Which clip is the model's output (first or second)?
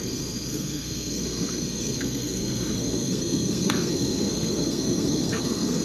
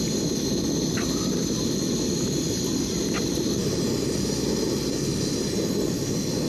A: first